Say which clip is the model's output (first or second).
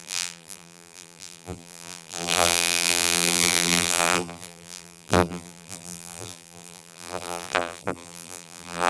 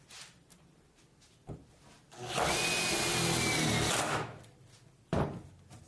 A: first